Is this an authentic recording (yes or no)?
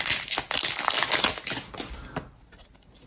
yes